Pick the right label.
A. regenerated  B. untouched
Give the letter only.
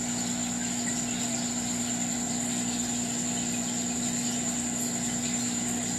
B